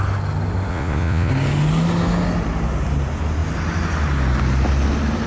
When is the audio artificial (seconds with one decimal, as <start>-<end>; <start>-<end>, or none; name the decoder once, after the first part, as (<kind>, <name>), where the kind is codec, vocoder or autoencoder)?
0.7-1.3 (vocoder, Vocos)